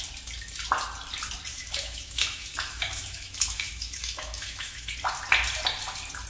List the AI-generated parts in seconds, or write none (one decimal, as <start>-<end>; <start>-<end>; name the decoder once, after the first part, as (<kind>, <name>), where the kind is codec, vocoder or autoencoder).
1.5-4.9 (autoencoder, DAC-VAE)